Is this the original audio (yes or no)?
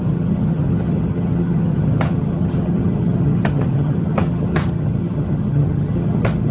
no